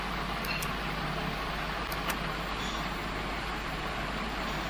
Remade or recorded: recorded